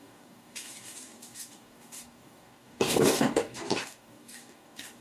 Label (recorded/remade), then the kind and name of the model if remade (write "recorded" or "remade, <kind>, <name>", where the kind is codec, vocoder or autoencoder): remade, codec, DAC